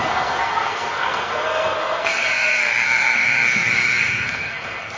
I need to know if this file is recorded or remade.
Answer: remade